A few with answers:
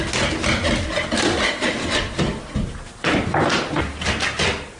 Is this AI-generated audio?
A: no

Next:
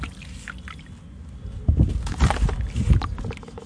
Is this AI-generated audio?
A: no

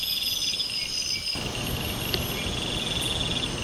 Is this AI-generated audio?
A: no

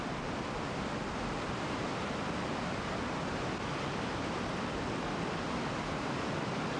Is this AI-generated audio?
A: no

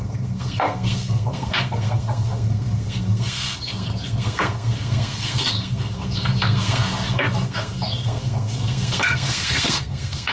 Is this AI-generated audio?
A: yes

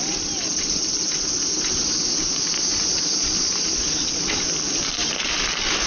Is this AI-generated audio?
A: no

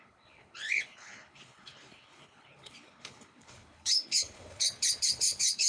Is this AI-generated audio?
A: yes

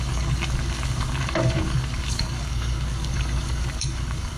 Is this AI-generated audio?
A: yes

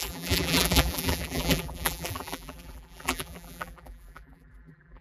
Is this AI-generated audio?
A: yes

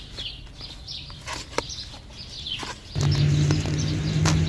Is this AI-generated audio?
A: no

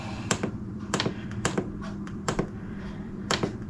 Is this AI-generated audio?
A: yes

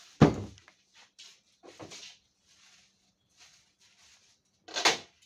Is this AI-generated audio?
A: no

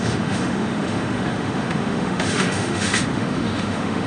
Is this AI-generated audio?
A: yes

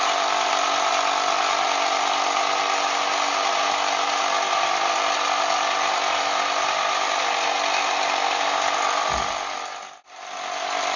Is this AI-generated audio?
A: no